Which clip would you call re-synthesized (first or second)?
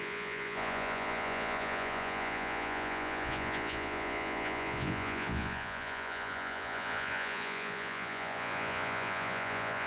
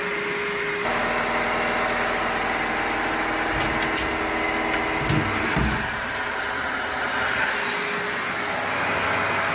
first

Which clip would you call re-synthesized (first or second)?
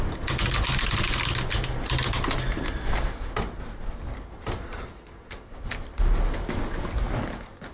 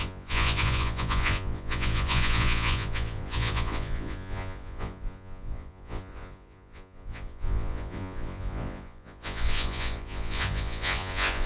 second